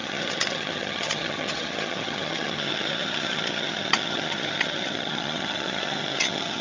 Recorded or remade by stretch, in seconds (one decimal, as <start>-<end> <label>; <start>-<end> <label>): 0.0-6.6 remade